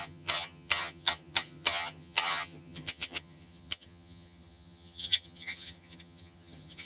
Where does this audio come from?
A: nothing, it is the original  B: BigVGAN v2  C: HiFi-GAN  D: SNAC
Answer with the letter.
C